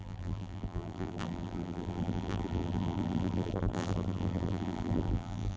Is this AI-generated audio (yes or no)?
yes